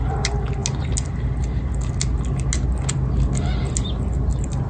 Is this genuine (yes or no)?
yes